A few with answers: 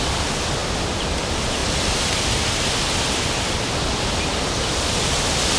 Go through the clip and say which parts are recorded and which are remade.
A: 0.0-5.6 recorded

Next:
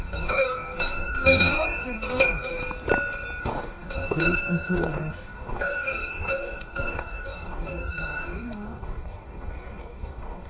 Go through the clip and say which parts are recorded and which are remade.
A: 0.0-2.6 remade; 2.6-3.4 recorded; 3.4-10.5 remade

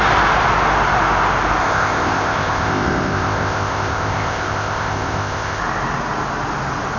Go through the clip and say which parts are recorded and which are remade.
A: 0.0-1.6 recorded; 1.6-5.6 remade; 5.6-7.0 recorded

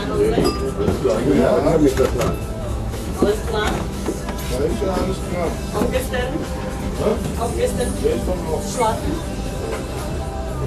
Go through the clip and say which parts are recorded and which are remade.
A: 0.0-2.6 recorded; 2.6-4.1 remade; 4.1-10.7 recorded

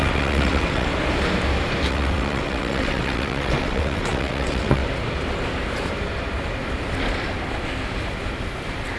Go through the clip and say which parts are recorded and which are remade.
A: 0.0-0.9 remade; 0.9-1.9 recorded; 1.9-4.8 remade; 4.8-9.0 recorded

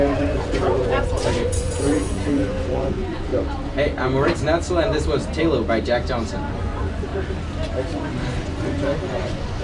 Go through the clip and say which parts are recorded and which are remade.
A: 0.0-3.3 remade; 3.3-6.5 recorded; 6.5-7.1 remade; 7.1-8.4 recorded; 8.4-9.6 remade